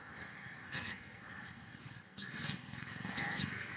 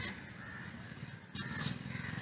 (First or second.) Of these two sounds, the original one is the second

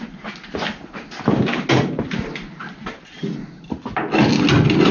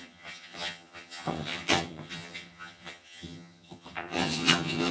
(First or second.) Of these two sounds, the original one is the first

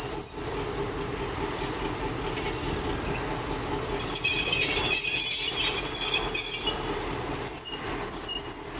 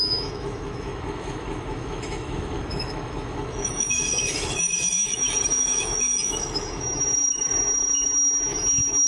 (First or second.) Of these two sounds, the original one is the first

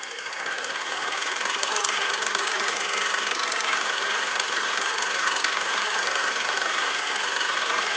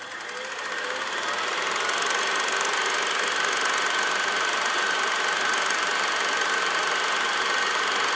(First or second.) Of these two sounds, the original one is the second